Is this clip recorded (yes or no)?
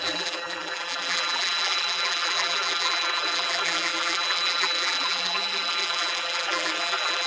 no